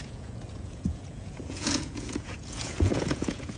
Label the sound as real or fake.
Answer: fake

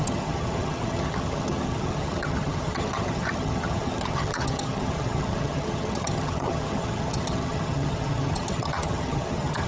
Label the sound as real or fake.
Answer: fake